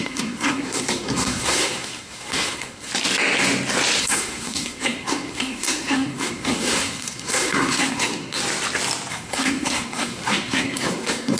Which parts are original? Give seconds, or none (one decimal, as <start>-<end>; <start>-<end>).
2.9-4.0; 8.4-9.1